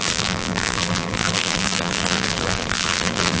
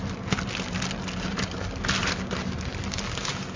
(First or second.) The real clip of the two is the second